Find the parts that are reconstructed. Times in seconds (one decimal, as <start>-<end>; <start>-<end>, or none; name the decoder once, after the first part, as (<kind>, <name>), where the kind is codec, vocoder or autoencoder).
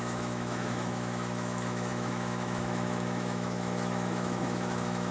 0.0-5.1 (autoencoder, DAC-VAE)